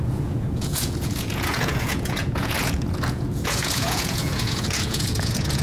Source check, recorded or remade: remade